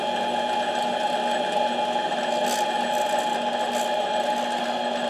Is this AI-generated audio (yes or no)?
no